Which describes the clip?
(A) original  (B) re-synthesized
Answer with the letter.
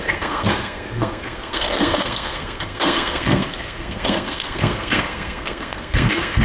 B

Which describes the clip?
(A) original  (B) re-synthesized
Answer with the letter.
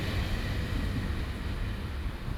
A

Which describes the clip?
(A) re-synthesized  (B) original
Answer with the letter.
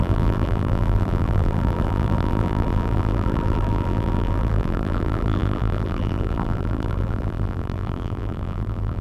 A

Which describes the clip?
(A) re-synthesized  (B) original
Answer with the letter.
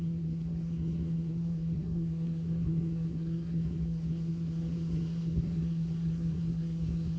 A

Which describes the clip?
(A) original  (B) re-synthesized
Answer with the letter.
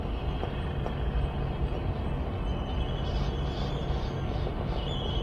A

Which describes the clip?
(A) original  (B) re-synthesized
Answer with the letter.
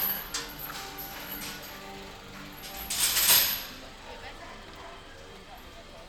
A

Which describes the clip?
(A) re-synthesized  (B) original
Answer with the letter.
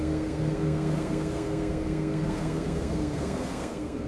A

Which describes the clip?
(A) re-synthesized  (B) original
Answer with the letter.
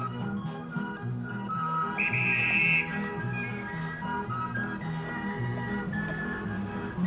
B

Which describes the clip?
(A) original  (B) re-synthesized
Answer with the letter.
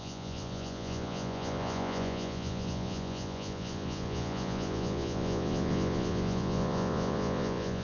B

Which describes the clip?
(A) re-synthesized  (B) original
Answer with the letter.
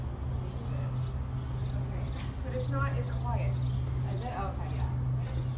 B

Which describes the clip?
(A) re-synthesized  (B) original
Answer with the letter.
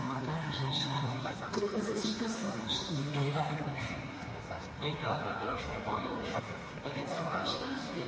A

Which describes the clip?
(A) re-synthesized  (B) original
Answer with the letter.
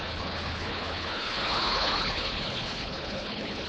A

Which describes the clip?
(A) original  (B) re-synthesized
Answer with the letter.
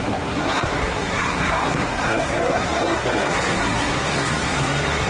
B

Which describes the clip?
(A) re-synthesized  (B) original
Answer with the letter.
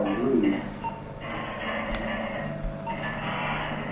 B